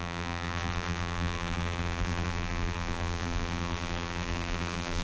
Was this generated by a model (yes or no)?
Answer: yes